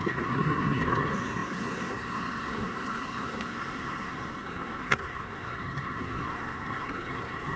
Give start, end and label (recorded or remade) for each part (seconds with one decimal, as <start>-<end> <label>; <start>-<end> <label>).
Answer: 0.0-7.6 remade